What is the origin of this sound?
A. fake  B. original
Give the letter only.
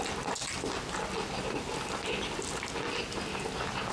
B